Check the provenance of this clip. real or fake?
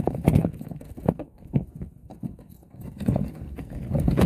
fake